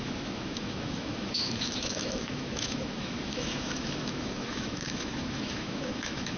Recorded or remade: remade